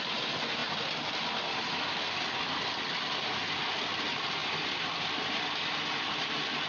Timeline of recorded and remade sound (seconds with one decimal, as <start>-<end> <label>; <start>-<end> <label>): 0.0-6.7 recorded